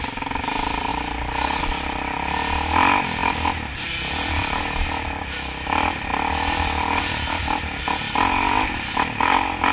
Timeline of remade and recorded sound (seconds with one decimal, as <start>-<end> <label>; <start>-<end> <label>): 0.0-0.9 remade; 0.9-1.6 recorded; 1.6-3.2 remade; 3.2-3.7 recorded; 3.7-9.7 remade